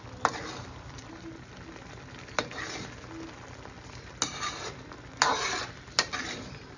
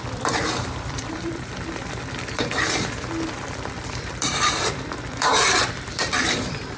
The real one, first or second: first